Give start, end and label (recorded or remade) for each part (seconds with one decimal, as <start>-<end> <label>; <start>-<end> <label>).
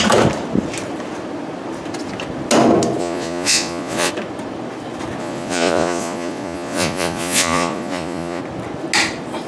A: 0.0-3.0 recorded; 3.0-4.1 remade; 4.1-5.2 recorded; 5.2-8.4 remade; 8.4-9.5 recorded